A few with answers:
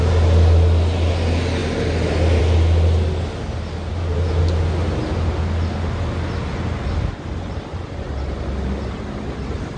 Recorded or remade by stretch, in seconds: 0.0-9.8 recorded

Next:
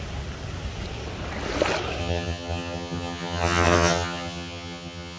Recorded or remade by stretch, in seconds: 0.0-2.0 recorded; 2.0-5.2 remade

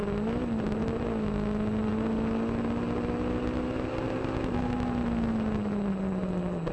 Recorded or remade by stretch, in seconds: 0.0-6.7 recorded

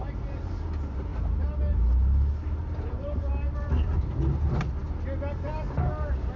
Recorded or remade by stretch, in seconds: 0.0-6.4 recorded

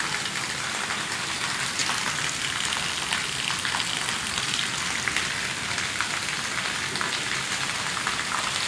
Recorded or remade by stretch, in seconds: 0.0-8.7 recorded

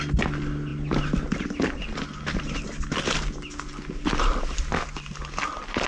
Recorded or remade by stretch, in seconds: 0.0-5.9 recorded

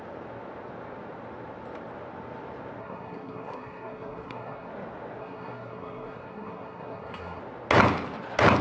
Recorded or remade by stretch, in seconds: 0.0-2.8 recorded; 2.8-4.7 remade; 4.7-5.2 recorded; 5.2-7.4 remade; 7.4-8.6 recorded